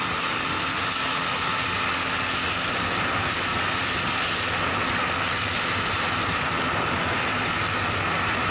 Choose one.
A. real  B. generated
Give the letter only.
A